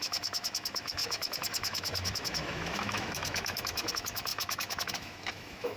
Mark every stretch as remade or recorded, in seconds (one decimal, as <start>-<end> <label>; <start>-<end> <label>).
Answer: 0.0-5.8 remade